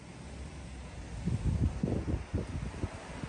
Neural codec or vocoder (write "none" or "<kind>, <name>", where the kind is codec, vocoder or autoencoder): none